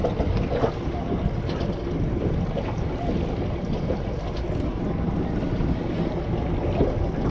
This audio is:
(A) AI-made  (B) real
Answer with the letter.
B